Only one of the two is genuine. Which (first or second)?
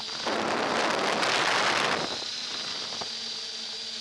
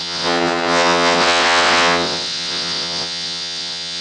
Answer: first